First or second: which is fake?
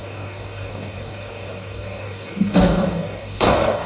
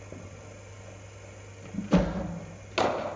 first